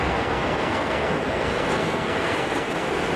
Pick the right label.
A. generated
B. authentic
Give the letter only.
A